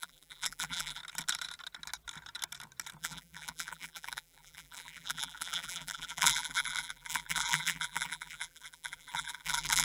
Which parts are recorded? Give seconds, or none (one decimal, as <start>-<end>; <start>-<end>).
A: 1.0-3.0